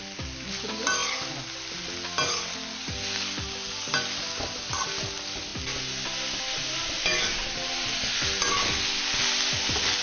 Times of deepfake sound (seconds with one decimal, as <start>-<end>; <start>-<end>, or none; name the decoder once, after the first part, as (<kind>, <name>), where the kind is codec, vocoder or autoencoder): none